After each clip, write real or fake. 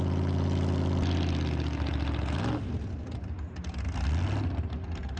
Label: real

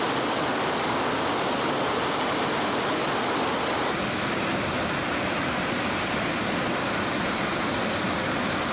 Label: real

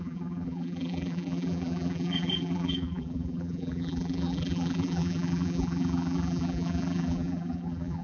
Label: fake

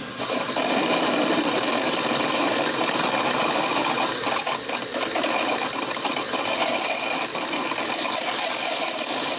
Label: fake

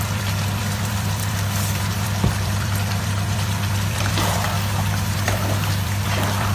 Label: fake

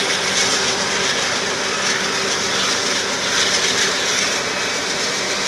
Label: real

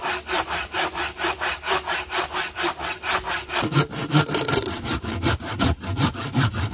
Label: fake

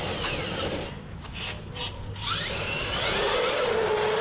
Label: real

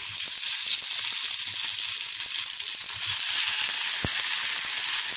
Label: real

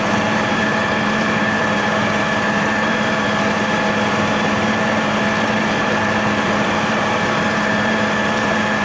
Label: fake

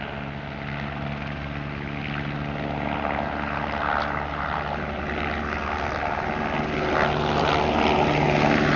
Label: real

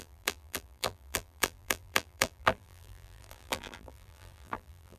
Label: fake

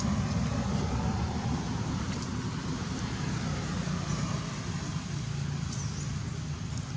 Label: real